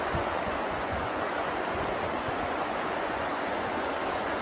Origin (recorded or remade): remade